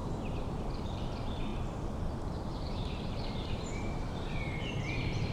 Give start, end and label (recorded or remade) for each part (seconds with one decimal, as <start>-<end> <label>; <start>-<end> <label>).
0.0-1.0 remade; 1.0-1.5 recorded; 1.5-4.7 remade; 4.7-5.3 recorded